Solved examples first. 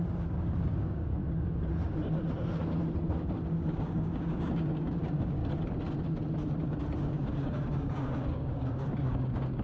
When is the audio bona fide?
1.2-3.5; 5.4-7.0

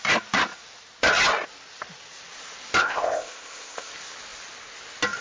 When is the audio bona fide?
0.0-2.8; 3.9-5.2

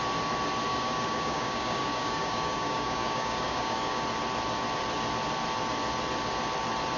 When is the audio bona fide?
0.0-0.7; 4.0-7.0

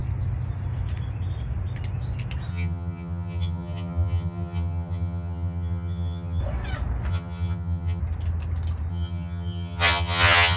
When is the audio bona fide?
0.0-2.5; 6.4-7.1; 8.0-8.9

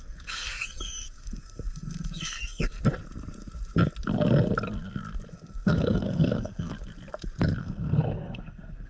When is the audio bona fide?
2.7-5.3; 6.7-7.6

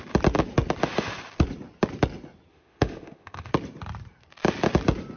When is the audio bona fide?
0.0-2.5; 3.5-5.2